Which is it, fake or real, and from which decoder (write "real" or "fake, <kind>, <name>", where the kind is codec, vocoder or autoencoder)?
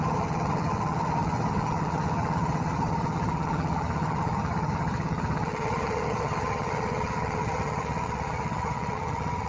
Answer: fake, vocoder, HiFi-GAN